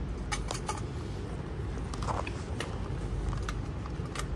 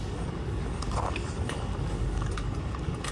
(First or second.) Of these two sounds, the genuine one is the first